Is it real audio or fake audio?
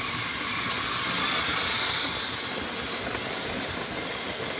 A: real